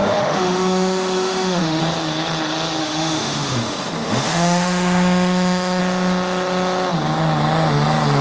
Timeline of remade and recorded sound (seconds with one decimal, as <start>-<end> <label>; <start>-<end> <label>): 0.0-1.8 remade; 1.8-2.8 recorded; 2.8-5.8 remade; 5.8-8.2 recorded